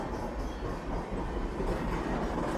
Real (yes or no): yes